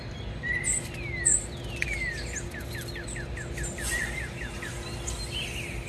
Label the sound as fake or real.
real